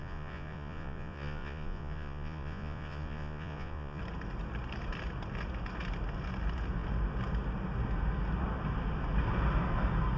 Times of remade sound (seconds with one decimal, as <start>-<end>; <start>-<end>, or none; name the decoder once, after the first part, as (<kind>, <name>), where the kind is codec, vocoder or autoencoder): 0.0-4.0 (vocoder, Vocos)